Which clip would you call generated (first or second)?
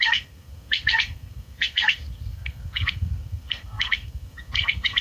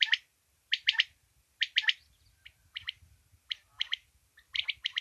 first